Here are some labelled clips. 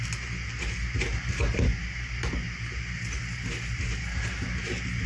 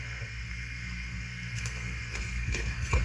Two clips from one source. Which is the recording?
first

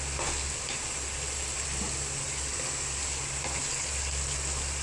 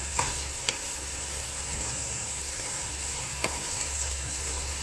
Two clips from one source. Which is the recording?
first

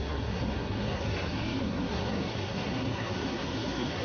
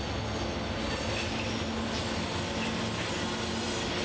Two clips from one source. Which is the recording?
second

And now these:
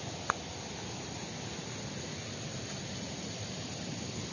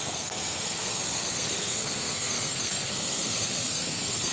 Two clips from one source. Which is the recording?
first